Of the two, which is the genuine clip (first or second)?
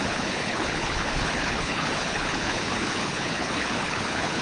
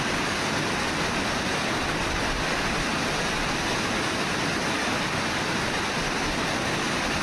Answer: second